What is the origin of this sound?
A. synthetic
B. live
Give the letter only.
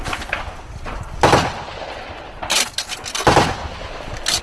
B